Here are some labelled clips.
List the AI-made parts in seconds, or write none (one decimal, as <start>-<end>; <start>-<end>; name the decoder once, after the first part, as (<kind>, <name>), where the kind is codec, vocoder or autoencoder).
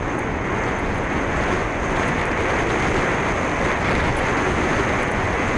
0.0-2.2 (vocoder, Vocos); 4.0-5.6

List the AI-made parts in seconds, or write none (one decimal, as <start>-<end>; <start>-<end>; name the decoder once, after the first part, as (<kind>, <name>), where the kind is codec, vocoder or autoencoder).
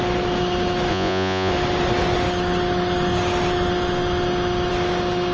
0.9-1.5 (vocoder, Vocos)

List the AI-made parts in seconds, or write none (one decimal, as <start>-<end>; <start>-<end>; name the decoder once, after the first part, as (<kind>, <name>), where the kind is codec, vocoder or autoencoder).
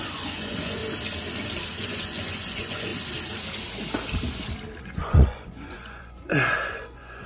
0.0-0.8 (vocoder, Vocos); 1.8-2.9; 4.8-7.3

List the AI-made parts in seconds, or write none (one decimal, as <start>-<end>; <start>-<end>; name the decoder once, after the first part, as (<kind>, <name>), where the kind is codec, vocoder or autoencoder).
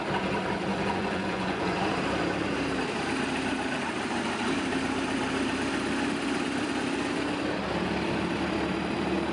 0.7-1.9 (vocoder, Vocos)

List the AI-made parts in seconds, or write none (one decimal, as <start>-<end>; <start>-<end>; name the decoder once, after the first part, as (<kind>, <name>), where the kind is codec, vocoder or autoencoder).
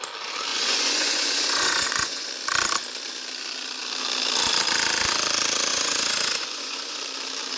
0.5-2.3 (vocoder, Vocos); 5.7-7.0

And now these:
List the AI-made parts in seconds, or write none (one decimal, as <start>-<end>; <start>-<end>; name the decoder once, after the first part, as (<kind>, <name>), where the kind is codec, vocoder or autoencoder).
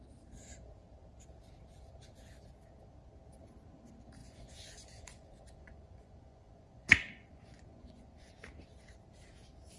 4.2-8.3 (vocoder, Vocos)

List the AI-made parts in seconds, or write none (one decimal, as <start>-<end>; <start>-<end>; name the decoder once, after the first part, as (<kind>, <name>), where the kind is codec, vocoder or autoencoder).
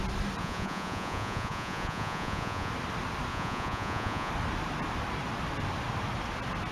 0.4-2.7 (vocoder, Vocos); 3.3-4.3